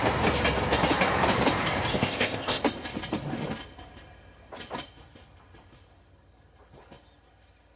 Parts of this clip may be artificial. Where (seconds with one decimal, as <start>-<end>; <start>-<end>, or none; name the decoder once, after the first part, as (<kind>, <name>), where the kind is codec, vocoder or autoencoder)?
1.9-2.6 (codec, ZipCodec)